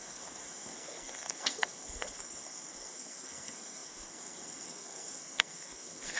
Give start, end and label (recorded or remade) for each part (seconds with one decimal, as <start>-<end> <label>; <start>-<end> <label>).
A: 0.0-6.2 remade

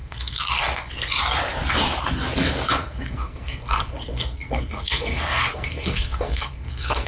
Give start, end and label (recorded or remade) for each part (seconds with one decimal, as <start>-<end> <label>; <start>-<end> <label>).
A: 0.0-0.9 remade; 0.9-2.8 recorded; 2.8-7.1 remade